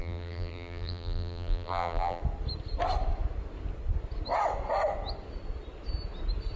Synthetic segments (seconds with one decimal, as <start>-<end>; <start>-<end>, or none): 0.0-2.2